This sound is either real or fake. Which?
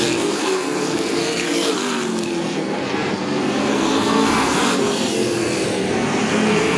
fake